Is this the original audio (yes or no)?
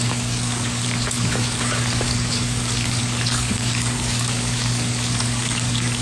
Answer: no